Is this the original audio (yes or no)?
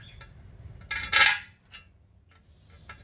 yes